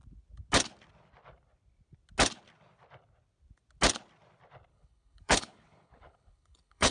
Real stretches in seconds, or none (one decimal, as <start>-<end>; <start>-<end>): 0.0-4.7

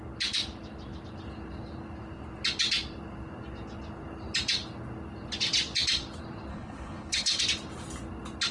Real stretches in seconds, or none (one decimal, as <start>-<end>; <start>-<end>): 0.0-6.5; 7.4-8.5